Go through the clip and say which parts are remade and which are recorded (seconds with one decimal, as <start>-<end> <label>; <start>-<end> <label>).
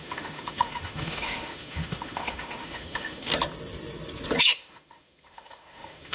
0.0-3.3 remade; 3.3-4.4 recorded; 4.4-6.1 remade